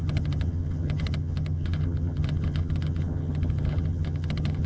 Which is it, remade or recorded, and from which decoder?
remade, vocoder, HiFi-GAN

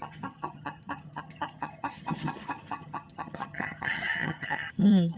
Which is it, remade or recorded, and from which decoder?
remade, vocoder, HiFi-GAN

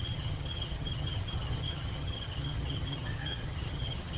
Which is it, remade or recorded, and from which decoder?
remade, vocoder, HiFi-GAN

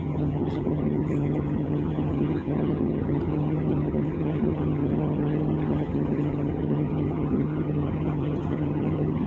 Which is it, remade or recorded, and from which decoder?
remade, vocoder, HiFi-GAN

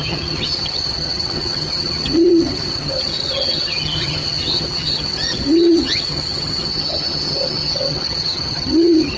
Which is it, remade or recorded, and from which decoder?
remade, vocoder, HiFi-GAN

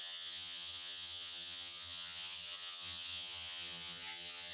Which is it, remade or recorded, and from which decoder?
remade, vocoder, HiFi-GAN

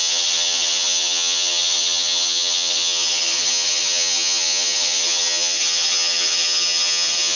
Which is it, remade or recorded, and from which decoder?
remade, vocoder, HiFi-GAN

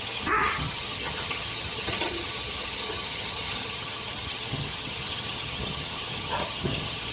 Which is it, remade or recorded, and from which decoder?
remade, vocoder, HiFi-GAN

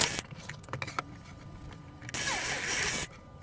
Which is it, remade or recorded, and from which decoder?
recorded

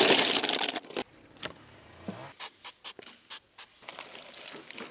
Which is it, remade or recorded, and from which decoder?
recorded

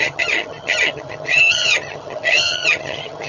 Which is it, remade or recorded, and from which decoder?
remade, vocoder, HiFi-GAN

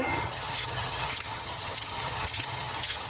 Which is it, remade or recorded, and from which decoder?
remade, vocoder, HiFi-GAN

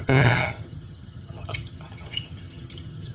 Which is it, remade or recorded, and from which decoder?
remade, vocoder, HiFi-GAN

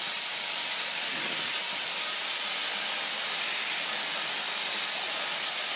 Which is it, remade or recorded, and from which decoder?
recorded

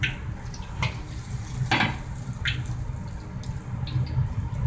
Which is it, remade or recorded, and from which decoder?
recorded